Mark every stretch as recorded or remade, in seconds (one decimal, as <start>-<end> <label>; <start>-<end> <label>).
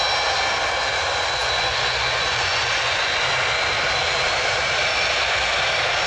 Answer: 0.0-1.4 recorded; 1.4-3.2 remade; 3.2-6.1 recorded